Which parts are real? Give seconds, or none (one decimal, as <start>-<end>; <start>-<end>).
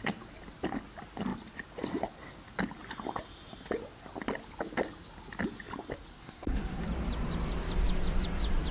0.0-6.1; 6.8-8.7